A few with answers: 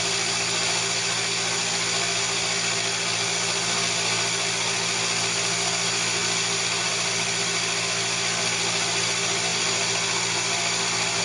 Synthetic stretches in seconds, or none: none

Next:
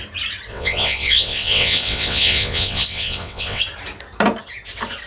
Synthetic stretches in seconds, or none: 0.5-3.6 (vocoder, WaveNeXt)

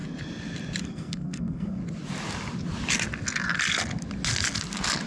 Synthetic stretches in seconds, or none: 0.8-1.8 (codec, SNAC)

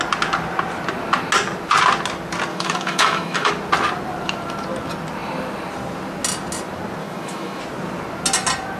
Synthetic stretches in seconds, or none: 2.5-3.5 (autoencoder, DAC-VAE); 7.0-7.6

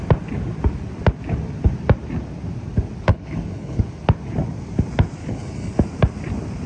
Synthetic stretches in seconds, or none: 3.1-3.8 (codec, HILCodec); 5.2-5.7

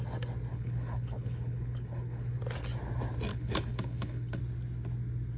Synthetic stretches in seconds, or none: 0.5-2.4 (codec, HILCodec); 3.3-4.4